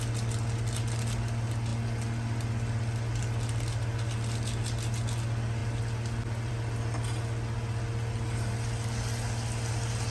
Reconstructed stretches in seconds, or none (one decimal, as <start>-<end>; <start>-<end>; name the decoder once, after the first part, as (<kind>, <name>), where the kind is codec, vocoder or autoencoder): none

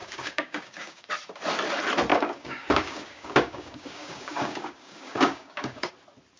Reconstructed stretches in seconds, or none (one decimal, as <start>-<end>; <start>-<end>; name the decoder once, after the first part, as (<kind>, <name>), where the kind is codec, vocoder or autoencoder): 0.0-1.1 (codec, DAC); 2.1-5.9

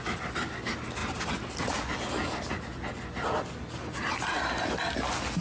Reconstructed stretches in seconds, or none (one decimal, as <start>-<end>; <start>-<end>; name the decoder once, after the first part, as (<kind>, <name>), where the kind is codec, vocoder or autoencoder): none

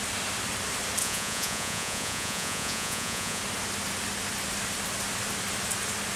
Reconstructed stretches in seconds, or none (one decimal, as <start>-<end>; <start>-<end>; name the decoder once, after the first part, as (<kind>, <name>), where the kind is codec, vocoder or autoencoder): 1.0-3.4 (vocoder, Vocos)

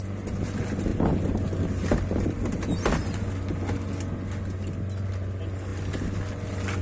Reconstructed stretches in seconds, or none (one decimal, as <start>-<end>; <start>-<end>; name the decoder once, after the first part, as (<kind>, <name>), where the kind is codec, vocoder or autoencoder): none

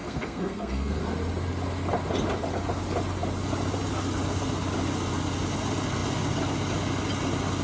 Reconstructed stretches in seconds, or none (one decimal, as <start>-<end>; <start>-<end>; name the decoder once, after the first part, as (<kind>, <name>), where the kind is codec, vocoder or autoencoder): 0.0-1.0 (codec, SNAC)